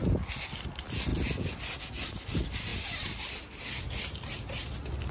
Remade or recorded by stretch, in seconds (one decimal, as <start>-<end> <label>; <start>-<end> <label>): 0.0-5.1 recorded